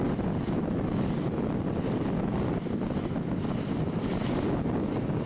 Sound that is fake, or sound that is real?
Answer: real